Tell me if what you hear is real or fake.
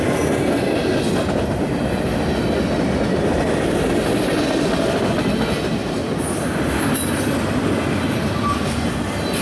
real